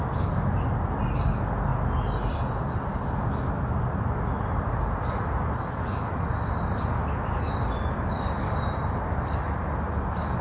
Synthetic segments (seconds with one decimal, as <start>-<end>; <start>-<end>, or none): none